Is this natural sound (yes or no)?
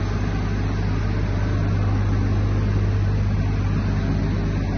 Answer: yes